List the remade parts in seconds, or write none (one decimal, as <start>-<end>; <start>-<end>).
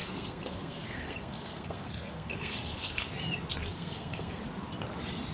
0.0-3.1; 3.7-4.4